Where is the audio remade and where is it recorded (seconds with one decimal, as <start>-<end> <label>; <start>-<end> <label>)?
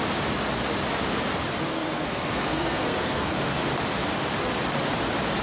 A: 0.0-1.7 recorded; 1.7-3.6 remade; 3.6-5.4 recorded